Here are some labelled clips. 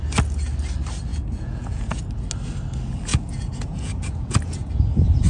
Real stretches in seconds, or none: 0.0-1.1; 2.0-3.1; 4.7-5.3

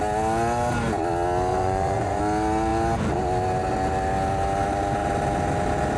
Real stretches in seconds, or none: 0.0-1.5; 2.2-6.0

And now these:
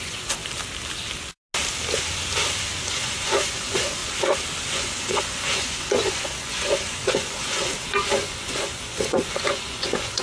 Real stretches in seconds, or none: 0.4-2.8; 4.0-4.7